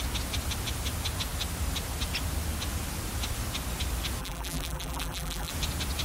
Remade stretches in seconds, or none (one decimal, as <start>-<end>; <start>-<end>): 4.2-5.5